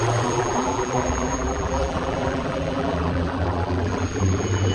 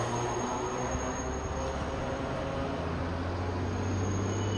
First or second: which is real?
second